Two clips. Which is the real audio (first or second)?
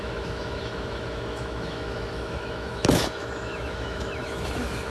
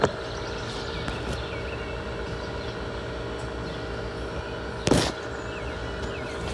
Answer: second